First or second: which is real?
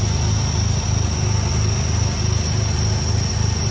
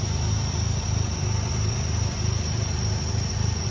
first